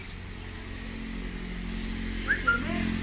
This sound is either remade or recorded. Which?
recorded